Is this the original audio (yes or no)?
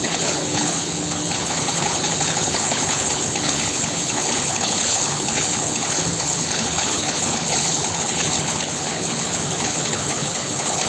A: no